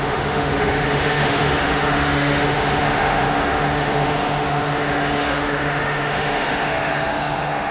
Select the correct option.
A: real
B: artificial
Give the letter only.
B